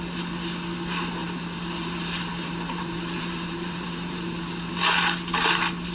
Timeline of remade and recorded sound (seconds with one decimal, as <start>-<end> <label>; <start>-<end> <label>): 0.0-1.2 recorded; 1.2-4.7 remade; 4.7-5.9 recorded